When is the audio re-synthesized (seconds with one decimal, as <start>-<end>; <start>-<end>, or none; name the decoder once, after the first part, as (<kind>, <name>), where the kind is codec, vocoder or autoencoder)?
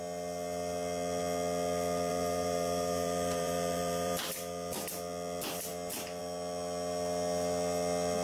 2.1-4.3 (vocoder, BigVGAN v2)